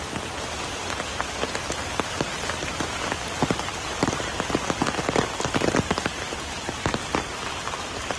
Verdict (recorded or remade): recorded